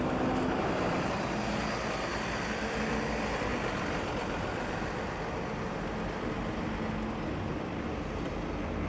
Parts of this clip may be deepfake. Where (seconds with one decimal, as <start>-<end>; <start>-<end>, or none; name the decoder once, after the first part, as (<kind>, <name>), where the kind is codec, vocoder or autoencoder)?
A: none

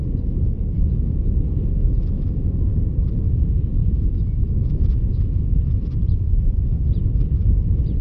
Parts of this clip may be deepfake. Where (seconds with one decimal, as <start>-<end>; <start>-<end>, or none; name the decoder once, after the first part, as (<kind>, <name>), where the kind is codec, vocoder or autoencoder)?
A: 1.8-2.8 (autoencoder, DAC-VAE); 3.8-5.4

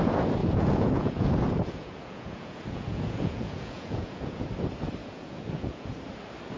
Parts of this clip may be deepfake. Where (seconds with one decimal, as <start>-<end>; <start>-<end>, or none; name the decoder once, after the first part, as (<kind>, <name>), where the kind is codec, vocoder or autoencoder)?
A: 0.4-4.4 (vocoder, Vocos); 5.0-6.0